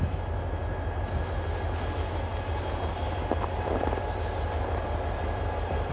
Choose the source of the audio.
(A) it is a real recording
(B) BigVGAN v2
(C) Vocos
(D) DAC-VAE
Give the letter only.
A